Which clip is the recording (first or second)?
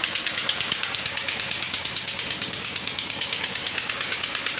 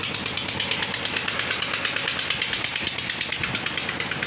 second